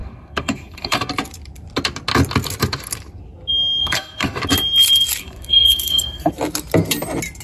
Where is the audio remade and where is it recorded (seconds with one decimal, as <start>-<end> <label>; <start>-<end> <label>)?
0.0-1.1 remade; 1.1-3.8 recorded; 3.8-4.4 remade; 4.4-5.2 recorded; 5.2-6.3 remade; 6.3-7.4 recorded